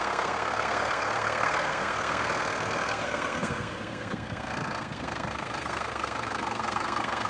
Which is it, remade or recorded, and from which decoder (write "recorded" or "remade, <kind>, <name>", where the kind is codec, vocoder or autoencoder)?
remade, codec, SNAC